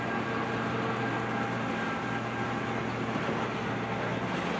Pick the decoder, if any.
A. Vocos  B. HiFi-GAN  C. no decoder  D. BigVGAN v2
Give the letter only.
C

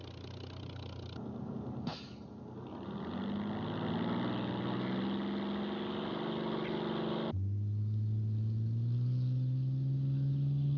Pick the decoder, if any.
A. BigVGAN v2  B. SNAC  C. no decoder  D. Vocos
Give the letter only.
C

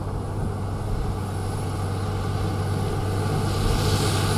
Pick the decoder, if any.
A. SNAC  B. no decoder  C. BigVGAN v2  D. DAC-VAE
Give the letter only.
B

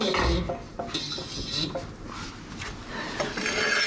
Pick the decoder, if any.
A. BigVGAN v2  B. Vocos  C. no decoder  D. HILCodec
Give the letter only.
C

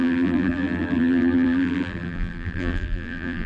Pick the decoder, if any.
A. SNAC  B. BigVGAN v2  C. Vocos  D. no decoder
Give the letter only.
B